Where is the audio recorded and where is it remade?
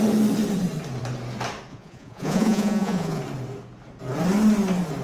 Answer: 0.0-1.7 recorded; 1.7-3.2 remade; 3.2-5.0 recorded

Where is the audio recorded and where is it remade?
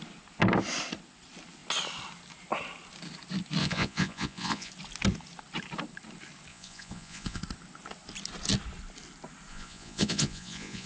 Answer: 0.0-3.6 recorded; 3.6-4.7 remade; 4.7-6.5 recorded; 6.5-7.4 remade; 7.4-9.5 recorded; 9.5-10.9 remade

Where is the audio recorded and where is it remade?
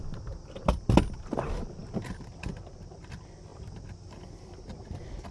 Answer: 0.0-5.3 recorded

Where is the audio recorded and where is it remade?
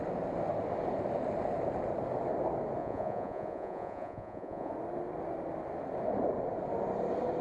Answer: 0.0-2.8 recorded; 2.8-4.7 remade; 4.7-7.4 recorded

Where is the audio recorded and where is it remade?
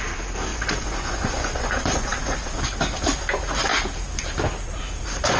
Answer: 0.0-0.5 recorded; 0.5-2.6 remade; 2.6-5.4 recorded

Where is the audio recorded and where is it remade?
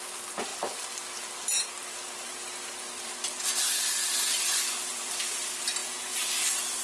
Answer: 0.0-5.8 recorded; 5.8-6.3 remade; 6.3-6.8 recorded